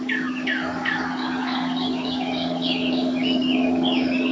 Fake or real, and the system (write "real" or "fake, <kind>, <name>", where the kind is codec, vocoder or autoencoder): fake, codec, DAC